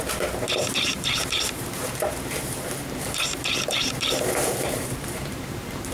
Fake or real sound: fake